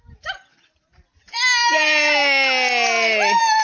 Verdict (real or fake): real